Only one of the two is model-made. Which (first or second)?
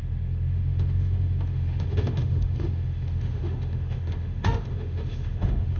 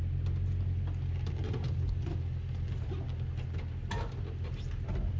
first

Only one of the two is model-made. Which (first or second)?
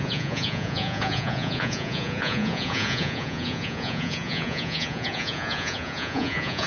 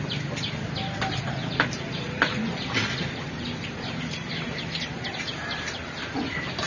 first